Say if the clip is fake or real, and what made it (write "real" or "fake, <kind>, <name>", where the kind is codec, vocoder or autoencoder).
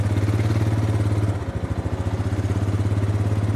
real